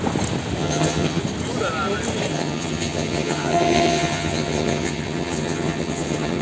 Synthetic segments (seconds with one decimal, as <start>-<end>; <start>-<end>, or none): 0.6-1.2; 2.3-6.4